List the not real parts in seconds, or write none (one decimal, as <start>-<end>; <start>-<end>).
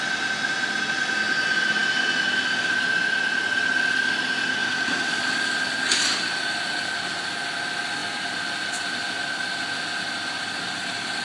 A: 4.6-6.1; 8.0-11.2